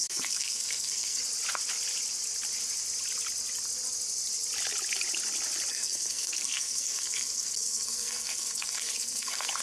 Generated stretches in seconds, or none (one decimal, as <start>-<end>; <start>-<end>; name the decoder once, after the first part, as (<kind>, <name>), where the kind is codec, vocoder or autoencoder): 0.0-1.2 (codec, SNAC); 5.7-9.6